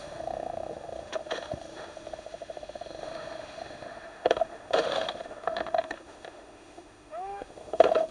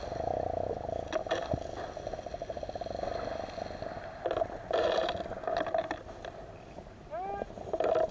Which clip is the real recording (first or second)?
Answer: second